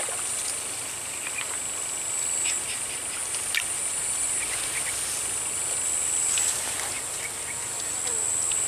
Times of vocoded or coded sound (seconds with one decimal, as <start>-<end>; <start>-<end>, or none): none